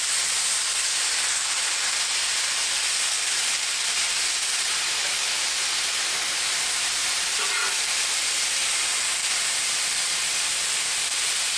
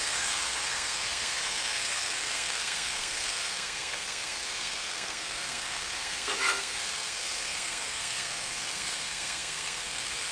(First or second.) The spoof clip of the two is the second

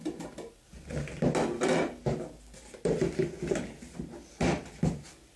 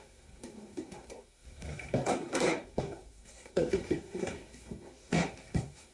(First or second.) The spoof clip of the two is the second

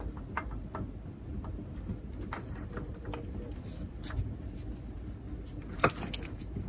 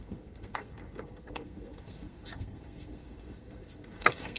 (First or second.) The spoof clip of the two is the second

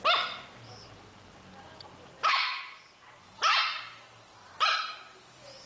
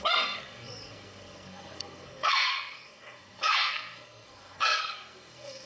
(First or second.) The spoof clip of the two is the second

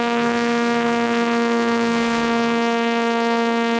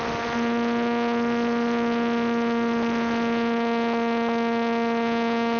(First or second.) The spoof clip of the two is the first